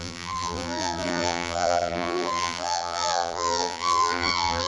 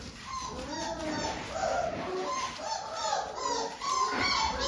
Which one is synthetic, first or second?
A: first